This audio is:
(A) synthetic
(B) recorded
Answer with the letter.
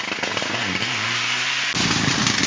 B